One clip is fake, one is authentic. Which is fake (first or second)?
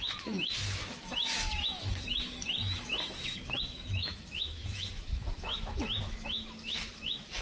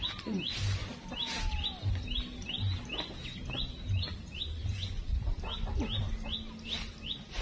first